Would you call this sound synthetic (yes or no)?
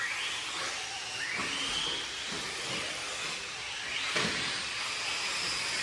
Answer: no